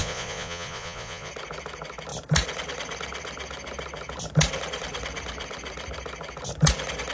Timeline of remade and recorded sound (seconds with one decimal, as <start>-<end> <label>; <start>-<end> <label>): 0.0-1.3 remade; 1.3-7.1 recorded